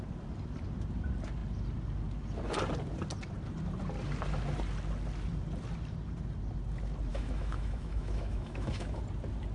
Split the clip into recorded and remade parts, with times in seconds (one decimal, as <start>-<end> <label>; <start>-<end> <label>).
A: 0.0-7.1 recorded; 7.1-9.0 remade; 9.0-9.5 recorded